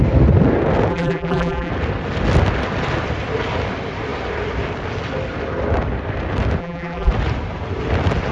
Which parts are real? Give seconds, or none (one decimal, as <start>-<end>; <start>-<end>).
0.0-0.9; 1.7-6.6; 7.1-8.3